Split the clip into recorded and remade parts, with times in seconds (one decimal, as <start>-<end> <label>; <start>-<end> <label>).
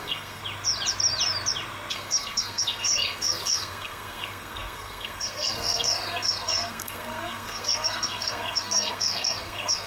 0.0-0.4 remade; 0.4-1.9 recorded; 1.9-9.9 remade